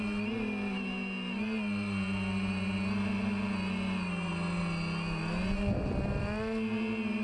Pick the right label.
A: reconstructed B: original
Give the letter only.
B